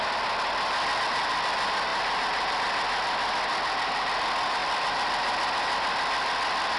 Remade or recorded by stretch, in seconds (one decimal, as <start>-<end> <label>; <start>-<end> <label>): 0.0-6.8 recorded